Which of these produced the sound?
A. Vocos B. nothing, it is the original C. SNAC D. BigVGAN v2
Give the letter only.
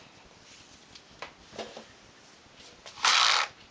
B